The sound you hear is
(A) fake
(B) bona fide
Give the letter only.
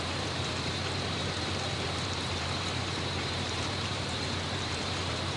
A